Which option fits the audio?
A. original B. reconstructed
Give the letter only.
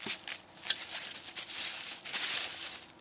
A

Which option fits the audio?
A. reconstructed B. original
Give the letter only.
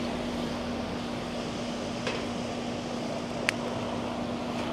B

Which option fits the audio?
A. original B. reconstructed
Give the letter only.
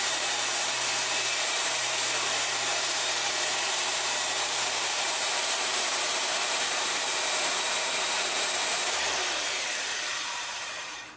B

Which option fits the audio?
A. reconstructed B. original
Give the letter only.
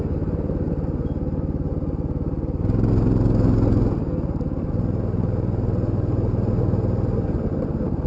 B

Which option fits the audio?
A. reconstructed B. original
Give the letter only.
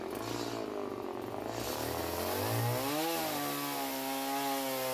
B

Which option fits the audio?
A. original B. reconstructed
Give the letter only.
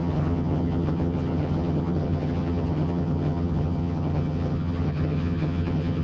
B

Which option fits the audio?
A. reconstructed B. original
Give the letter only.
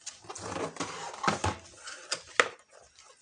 B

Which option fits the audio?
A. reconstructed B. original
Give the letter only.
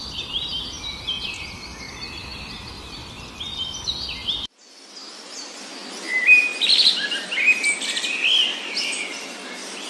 B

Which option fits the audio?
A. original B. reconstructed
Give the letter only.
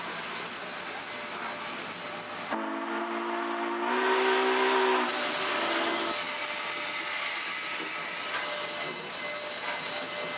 A